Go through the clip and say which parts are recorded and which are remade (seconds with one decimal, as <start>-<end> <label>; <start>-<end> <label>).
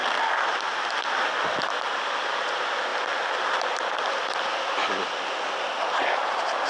0.0-6.7 recorded